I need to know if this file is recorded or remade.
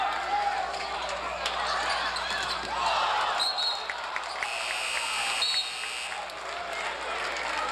recorded